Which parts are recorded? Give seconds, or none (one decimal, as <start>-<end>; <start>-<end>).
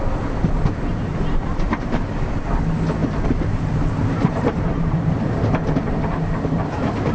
0.0-1.1; 1.7-3.0; 6.0-7.1